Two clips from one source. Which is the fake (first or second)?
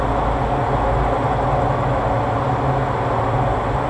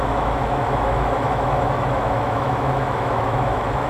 second